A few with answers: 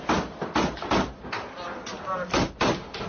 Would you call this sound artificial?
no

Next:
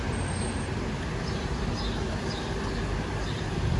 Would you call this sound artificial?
no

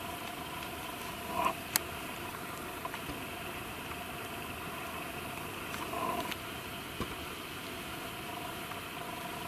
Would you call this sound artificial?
no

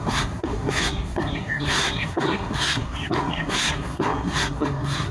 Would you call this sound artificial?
yes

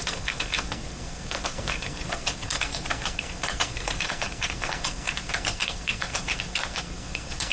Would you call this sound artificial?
yes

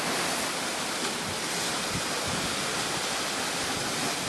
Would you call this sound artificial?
no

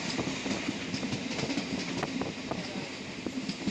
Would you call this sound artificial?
no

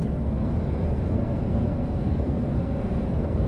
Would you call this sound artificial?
yes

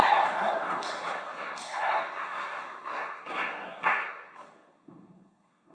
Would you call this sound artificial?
yes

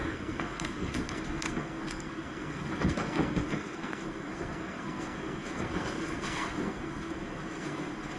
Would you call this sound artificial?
yes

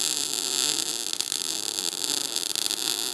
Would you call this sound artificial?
no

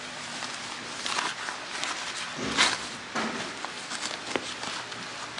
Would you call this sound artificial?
no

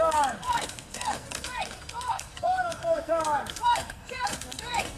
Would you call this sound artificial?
yes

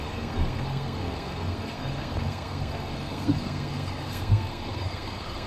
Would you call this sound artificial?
yes